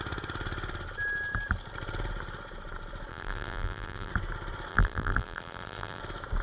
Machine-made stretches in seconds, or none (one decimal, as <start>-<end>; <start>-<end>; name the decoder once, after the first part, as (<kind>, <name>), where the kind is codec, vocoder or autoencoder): 3.1-4.1 (vocoder, BigVGAN v2); 4.7-6.0